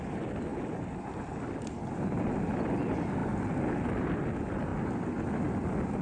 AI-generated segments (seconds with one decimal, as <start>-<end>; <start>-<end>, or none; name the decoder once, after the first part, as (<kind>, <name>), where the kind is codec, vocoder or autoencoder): none